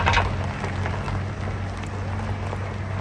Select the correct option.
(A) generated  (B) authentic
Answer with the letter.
B